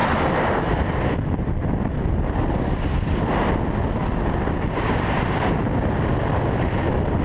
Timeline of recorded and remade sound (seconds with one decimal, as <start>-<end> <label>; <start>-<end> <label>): 0.0-3.2 remade; 3.2-4.0 recorded; 4.0-6.1 remade; 6.1-7.2 recorded